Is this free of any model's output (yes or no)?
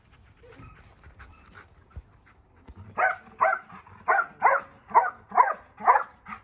yes